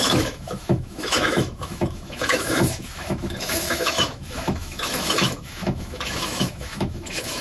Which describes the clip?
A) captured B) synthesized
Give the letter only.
B